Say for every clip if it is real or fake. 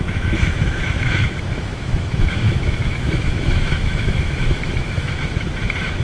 fake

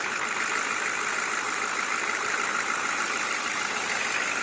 real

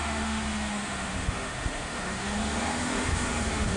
fake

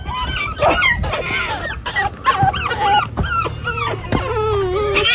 real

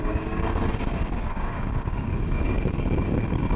fake